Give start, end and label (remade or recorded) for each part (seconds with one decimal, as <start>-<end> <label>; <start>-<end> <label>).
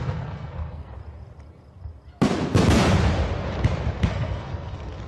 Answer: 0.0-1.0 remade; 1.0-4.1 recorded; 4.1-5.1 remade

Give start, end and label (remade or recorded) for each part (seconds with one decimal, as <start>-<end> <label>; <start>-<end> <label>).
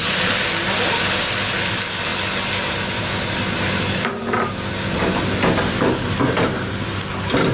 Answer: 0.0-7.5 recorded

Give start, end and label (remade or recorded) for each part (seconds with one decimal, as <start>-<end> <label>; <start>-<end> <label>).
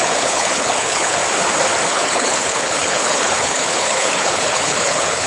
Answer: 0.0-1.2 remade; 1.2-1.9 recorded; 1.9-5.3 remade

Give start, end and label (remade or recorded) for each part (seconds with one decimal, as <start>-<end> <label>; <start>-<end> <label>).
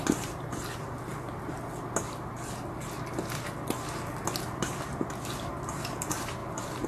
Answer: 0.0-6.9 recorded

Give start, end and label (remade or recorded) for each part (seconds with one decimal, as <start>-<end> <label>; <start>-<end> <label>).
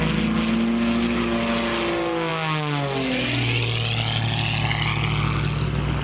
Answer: 0.0-6.0 recorded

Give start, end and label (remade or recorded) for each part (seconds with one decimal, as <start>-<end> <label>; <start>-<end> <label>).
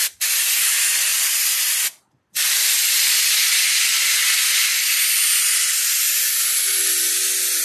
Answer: 0.0-1.1 recorded; 1.1-2.3 remade; 2.3-7.6 recorded